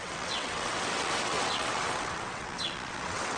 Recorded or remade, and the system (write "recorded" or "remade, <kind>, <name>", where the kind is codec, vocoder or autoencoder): remade, vocoder, WaveNeXt